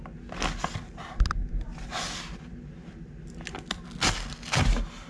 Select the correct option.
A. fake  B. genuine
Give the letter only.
B